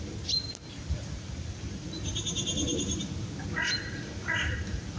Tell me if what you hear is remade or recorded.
recorded